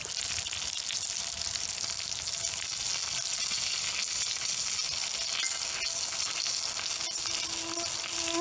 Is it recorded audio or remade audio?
recorded